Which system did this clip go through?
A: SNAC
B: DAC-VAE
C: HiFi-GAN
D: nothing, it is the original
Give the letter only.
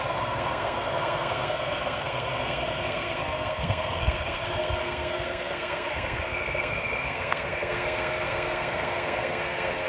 A